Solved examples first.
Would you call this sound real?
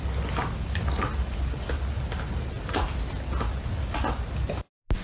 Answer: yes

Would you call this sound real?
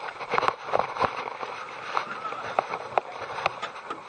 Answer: yes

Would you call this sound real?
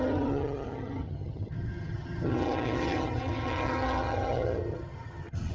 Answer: no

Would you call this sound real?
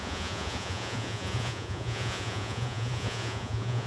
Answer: no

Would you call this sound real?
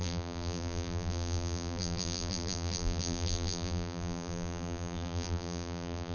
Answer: no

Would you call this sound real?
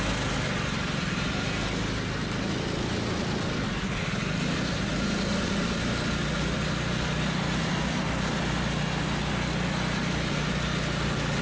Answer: yes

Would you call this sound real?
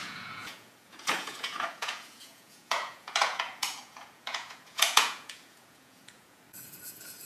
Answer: no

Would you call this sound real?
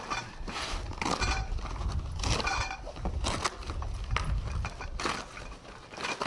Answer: yes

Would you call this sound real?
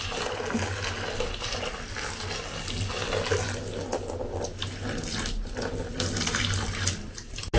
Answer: yes